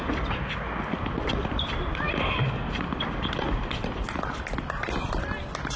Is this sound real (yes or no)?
no